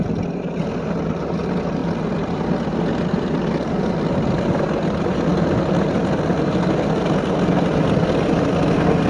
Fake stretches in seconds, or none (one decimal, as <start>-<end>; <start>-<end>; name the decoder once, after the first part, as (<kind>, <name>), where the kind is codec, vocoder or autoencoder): none

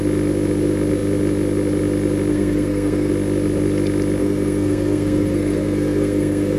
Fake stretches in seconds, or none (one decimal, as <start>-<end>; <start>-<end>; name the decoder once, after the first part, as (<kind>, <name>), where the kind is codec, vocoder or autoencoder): 2.3-3.1 (codec, SNAC); 4.2-6.6

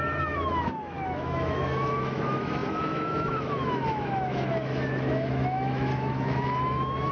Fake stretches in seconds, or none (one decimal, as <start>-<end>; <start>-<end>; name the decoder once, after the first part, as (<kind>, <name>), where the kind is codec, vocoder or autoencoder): 0.0-7.1 (autoencoder, DAC-VAE)

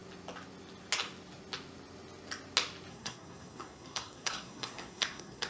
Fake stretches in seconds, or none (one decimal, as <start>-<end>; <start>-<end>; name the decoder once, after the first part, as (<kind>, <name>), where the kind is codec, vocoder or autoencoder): 2.9-5.5 (codec, SNAC)

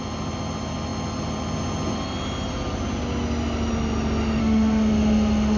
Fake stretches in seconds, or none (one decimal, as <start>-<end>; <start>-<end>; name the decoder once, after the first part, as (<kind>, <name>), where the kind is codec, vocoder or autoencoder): 4.4-5.6 (autoencoder, DAC-VAE)